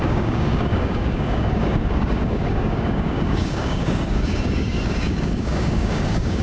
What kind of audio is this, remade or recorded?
remade